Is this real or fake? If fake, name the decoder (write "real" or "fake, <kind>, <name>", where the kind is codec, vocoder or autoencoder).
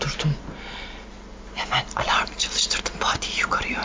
real